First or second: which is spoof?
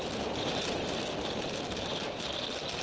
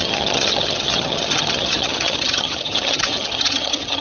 second